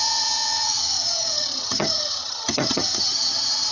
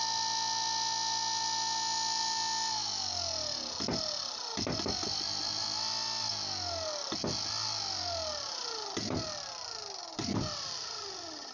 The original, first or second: second